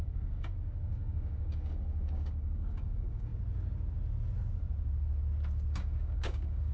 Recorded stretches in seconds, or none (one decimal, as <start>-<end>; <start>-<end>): 3.3-5.7